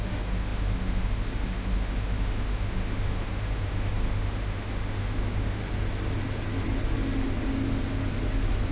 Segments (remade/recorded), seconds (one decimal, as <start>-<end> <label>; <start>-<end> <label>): 0.0-5.6 remade; 5.6-8.7 recorded